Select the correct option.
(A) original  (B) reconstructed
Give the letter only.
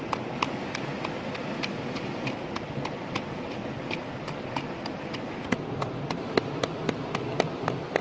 A